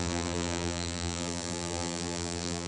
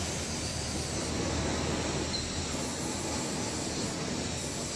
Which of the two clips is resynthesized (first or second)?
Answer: first